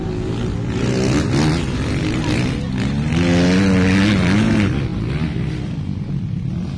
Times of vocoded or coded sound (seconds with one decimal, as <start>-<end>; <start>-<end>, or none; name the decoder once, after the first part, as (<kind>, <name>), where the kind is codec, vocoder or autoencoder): none